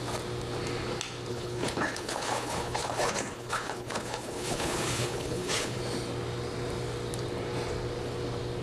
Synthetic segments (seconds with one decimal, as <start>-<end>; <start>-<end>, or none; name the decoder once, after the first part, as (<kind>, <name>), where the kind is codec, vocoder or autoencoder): 1.3-5.8 (codec, HILCodec)